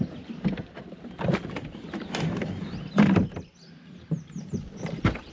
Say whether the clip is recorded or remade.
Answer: recorded